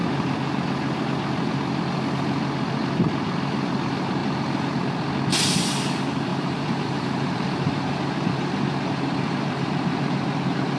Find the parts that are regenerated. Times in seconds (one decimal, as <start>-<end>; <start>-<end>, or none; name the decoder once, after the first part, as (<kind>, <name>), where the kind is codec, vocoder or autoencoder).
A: 6.3-10.8 (vocoder, BigVGAN v2)